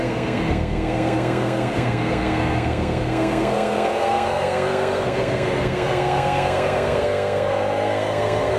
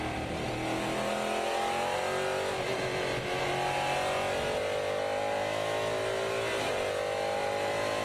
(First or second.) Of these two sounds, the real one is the second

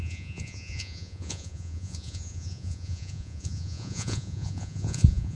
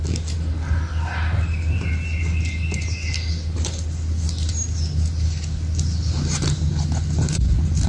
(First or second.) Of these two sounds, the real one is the second